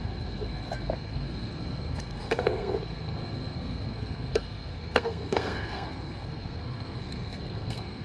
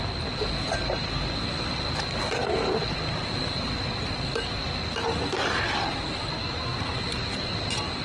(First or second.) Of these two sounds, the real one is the second